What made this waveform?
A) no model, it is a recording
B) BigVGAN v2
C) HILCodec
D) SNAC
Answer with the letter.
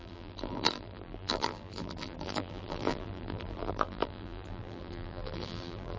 B